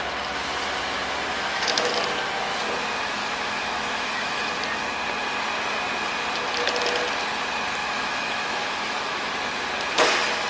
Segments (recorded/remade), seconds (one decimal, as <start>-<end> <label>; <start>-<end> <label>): 0.0-1.3 recorded; 1.3-1.9 remade; 1.9-3.2 recorded; 3.2-4.5 remade; 4.5-7.8 recorded; 7.8-9.3 remade; 9.3-10.5 recorded